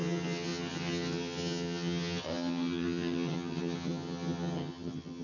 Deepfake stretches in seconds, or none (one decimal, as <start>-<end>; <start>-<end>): 0.0-5.2